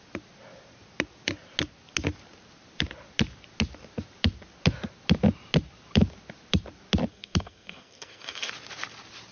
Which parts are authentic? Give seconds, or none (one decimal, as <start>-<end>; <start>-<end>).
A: 0.0-7.1; 8.5-9.3